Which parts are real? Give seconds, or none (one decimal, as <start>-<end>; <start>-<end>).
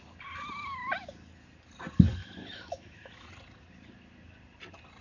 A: 0.0-2.2; 3.3-5.0